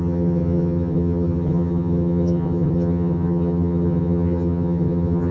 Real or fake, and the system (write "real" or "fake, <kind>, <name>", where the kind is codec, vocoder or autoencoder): fake, vocoder, HiFi-GAN